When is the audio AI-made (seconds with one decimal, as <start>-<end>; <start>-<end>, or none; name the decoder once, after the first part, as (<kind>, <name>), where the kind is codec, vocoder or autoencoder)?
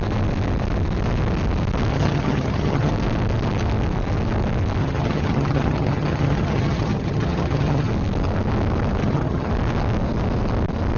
1.9-2.9 (vocoder, HiFi-GAN); 4.8-7.9; 9.0-9.5